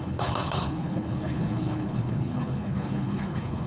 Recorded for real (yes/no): no